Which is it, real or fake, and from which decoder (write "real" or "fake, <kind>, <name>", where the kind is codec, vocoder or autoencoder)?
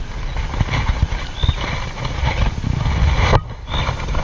real